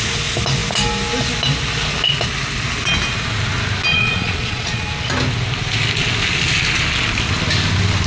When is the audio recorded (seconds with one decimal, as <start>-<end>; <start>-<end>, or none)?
0.0-3.9; 4.9-8.1